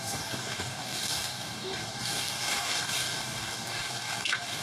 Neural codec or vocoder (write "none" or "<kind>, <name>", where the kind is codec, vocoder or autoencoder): codec, DAC